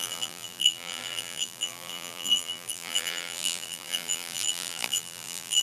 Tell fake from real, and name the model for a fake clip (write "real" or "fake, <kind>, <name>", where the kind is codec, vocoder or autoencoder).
fake, vocoder, BigVGAN v2